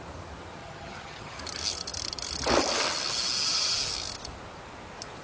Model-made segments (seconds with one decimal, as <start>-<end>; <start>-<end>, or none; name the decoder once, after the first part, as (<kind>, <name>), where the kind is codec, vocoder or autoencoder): 0.6-1.4 (vocoder, HiFi-GAN)